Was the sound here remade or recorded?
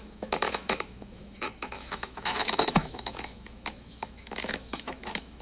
remade